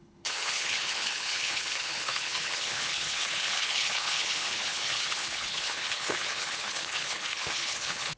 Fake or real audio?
fake